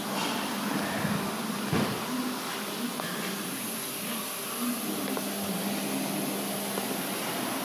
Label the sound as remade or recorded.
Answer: recorded